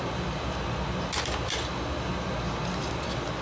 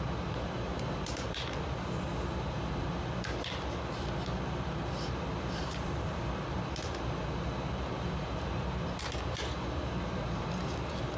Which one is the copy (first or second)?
second